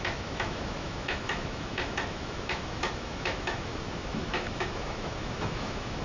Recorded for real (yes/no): no